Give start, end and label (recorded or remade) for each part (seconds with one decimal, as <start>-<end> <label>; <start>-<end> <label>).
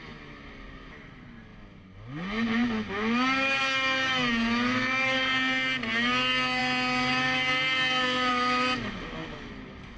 0.0-10.0 recorded